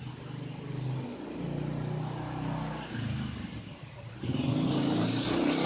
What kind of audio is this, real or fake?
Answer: real